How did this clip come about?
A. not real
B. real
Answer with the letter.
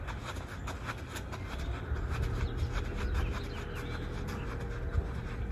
B